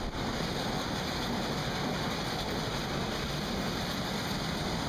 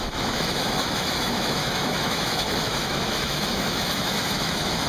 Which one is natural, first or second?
first